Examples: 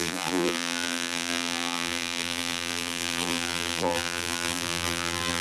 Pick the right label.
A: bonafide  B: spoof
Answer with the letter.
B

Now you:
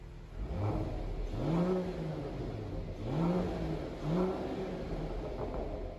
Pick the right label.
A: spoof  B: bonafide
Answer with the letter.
B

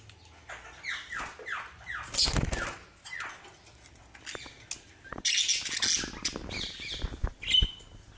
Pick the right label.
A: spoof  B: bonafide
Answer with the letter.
B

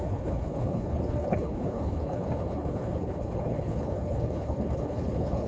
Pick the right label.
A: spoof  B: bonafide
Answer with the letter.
A